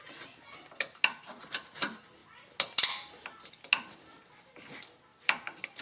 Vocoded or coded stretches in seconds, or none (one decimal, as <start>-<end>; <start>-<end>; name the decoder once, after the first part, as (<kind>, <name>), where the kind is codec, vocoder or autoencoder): none